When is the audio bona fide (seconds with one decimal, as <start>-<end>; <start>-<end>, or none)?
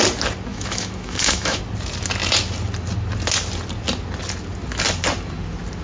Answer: 0.0-0.5; 1.6-5.8